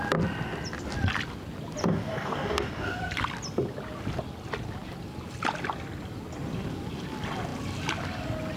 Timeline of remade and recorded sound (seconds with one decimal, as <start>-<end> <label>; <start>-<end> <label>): 0.0-1.8 recorded; 1.8-3.0 remade; 3.0-8.6 recorded